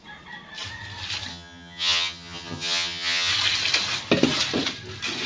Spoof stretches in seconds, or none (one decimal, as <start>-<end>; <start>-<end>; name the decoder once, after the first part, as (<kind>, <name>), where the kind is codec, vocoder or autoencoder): 1.3-3.3 (vocoder, HiFi-GAN)